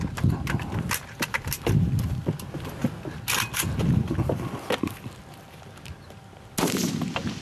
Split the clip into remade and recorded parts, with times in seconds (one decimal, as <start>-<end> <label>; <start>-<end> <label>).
0.0-7.4 recorded